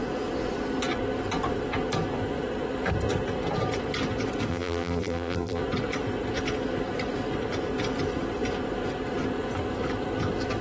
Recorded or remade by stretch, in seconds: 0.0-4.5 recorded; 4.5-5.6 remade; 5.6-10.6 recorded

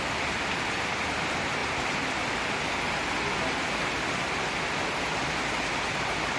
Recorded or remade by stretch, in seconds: 0.0-1.6 recorded; 1.6-2.3 remade; 2.3-6.4 recorded

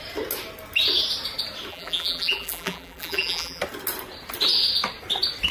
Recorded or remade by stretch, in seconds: 0.0-1.7 recorded; 1.7-3.6 remade; 3.6-5.5 recorded

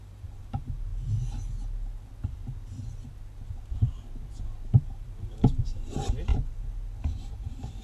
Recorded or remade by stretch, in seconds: 0.0-0.9 remade; 0.9-4.8 recorded; 4.8-6.3 remade; 6.3-7.0 recorded; 7.0-7.8 remade

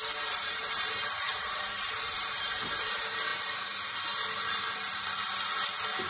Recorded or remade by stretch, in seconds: 0.0-3.3 remade; 3.3-6.1 recorded